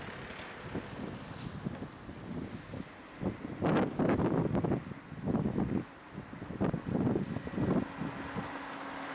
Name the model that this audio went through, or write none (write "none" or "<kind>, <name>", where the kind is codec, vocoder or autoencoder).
none